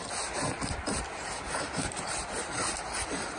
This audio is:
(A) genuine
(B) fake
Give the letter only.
A